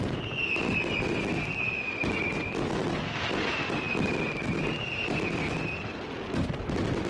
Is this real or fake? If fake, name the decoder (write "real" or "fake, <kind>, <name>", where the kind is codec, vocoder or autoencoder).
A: real